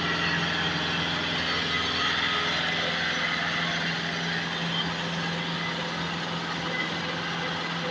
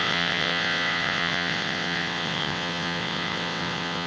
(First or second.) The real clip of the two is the first